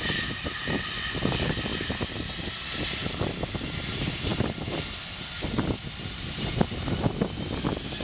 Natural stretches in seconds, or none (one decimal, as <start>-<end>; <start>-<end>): 0.0-8.0